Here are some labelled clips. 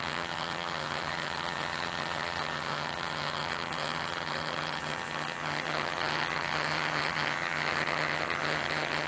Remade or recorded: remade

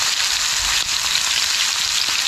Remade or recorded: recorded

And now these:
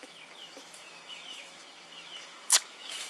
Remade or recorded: remade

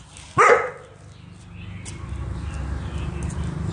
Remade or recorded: recorded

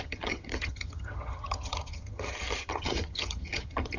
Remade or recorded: remade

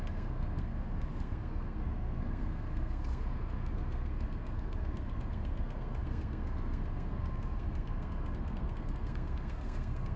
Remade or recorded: remade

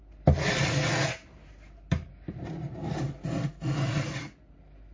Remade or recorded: recorded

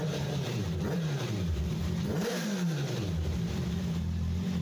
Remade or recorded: remade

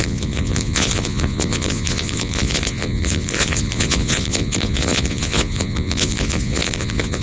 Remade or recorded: remade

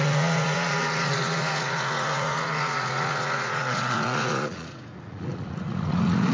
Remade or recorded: remade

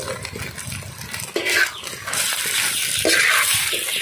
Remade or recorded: recorded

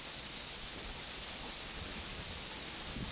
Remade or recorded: recorded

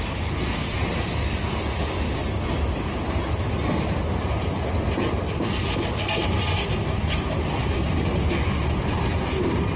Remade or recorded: recorded